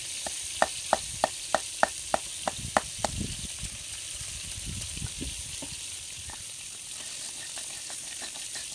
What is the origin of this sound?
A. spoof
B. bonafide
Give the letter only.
B